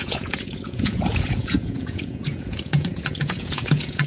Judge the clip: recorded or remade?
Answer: remade